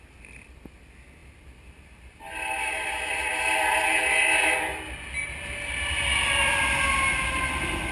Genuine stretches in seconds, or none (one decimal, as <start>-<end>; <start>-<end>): 0.0-1.2; 3.4-7.9